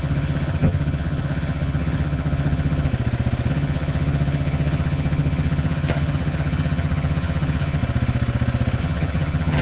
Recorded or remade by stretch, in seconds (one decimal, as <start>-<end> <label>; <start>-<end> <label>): 0.0-2.9 remade; 2.9-3.5 recorded; 3.5-7.8 remade; 7.8-8.8 recorded; 8.8-9.6 remade